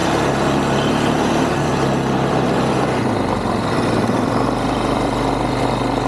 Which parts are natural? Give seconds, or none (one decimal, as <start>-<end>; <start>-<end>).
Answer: 0.0-0.9; 1.7-2.3